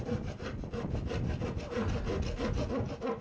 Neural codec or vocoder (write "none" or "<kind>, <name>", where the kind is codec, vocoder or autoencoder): none